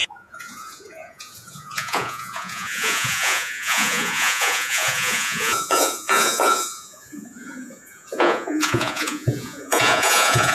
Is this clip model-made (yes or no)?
yes